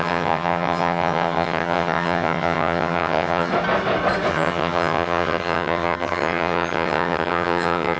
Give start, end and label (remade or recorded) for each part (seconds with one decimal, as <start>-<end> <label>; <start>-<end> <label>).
0.0-3.5 remade; 3.5-4.3 recorded; 4.3-8.0 remade